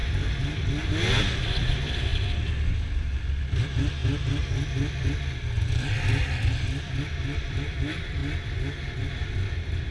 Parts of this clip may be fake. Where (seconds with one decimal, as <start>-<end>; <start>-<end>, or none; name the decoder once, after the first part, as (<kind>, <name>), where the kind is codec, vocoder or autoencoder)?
1.2-2.1 (vocoder, BigVGAN v2); 3.0-4.0; 5.6-8.2; 9.1-9.9

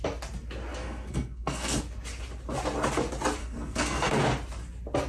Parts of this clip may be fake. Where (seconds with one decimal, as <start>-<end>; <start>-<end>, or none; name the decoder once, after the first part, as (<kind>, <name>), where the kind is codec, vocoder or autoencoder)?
0.8-1.8 (codec, SNAC); 3.4-4.2

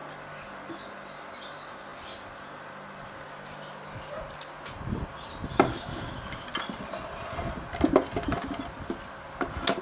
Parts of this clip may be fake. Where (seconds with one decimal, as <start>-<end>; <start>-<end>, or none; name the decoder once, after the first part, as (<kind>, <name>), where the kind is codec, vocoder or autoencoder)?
none

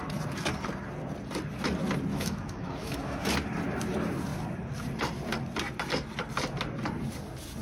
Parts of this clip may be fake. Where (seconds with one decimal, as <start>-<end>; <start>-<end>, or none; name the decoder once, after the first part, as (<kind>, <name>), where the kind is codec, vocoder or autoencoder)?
2.1-3.3 (autoencoder, DAC-VAE)

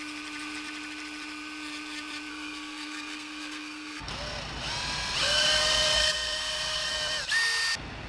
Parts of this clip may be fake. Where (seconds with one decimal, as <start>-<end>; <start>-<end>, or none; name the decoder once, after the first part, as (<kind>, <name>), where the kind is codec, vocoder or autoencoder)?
2.3-4.1 (codec, SNAC); 5.2-6.9